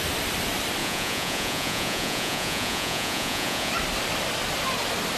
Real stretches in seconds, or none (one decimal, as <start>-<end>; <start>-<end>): 0.0-0.8; 3.7-5.2